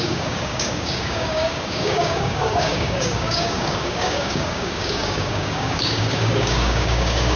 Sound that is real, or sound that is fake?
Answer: fake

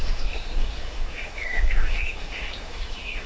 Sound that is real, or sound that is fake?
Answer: fake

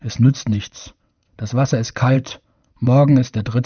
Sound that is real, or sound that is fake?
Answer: fake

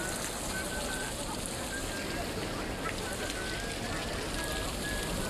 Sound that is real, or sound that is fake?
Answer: real